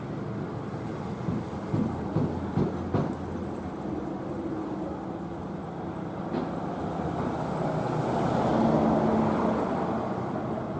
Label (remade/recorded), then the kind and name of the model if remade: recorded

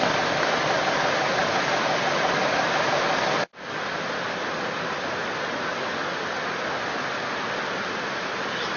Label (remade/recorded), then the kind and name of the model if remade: recorded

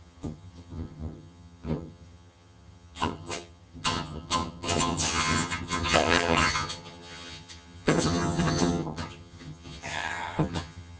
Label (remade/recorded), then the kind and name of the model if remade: remade, vocoder, HiFi-GAN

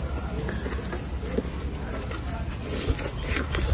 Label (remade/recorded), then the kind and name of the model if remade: recorded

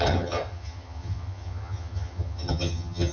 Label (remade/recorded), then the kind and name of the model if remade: remade, vocoder, HiFi-GAN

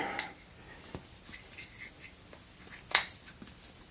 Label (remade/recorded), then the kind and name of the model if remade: recorded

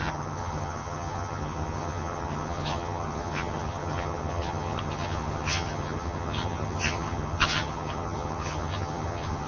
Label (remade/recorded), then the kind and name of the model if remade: remade, vocoder, HiFi-GAN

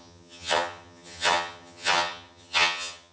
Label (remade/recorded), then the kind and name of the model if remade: remade, vocoder, HiFi-GAN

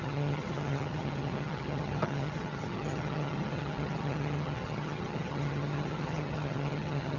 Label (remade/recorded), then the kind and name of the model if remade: remade, vocoder, HiFi-GAN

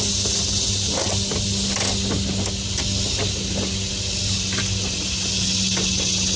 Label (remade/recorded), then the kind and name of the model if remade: recorded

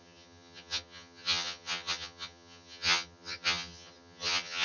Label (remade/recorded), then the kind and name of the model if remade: remade, vocoder, HiFi-GAN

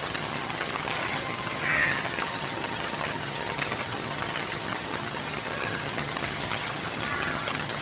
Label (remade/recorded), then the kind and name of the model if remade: remade, vocoder, HiFi-GAN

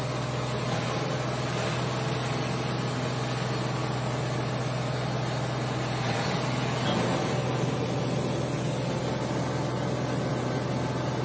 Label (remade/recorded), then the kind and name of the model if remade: recorded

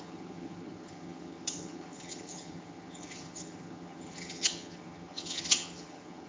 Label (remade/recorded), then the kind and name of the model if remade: remade, vocoder, HiFi-GAN